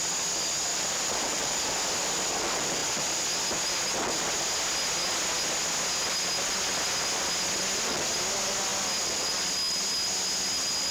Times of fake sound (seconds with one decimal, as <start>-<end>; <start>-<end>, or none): 0.7-1.6